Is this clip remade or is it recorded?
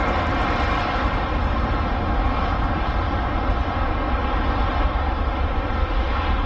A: recorded